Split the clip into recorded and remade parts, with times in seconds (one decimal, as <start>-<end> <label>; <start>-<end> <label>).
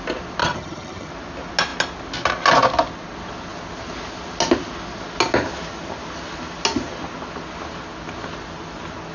0.0-0.4 recorded; 0.4-1.1 remade; 1.1-9.1 recorded